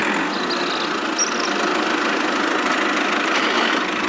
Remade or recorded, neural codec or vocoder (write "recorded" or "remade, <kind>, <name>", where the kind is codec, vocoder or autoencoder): recorded